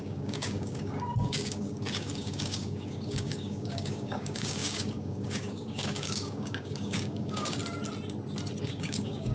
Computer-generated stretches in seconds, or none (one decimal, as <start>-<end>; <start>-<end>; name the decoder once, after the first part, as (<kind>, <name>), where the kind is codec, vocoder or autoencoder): 0.0-7.6 (codec, DAC); 8.6-9.3